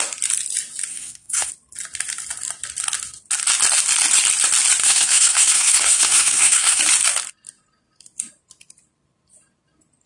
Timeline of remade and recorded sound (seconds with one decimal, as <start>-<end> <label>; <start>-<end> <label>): 0.0-0.9 recorded; 0.9-1.5 remade; 1.5-4.8 recorded; 4.8-6.8 remade; 6.8-10.1 recorded

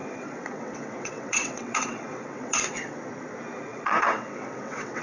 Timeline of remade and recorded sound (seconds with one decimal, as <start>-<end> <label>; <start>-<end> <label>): 0.0-3.0 remade; 3.0-3.7 recorded; 3.7-5.0 remade

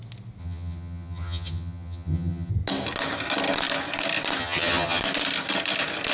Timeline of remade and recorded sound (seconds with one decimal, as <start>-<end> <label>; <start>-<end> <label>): 0.0-0.4 recorded; 0.4-2.5 remade; 2.5-4.4 recorded; 4.4-5.0 remade; 5.0-6.1 recorded